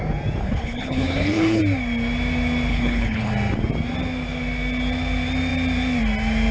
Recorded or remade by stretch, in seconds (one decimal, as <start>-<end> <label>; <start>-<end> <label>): 0.0-0.4 recorded; 0.4-1.6 remade; 1.6-2.7 recorded; 2.7-3.3 remade; 3.3-6.5 recorded